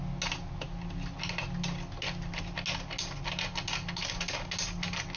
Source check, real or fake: real